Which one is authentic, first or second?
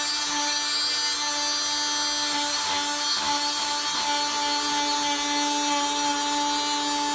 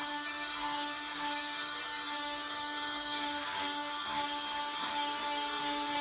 first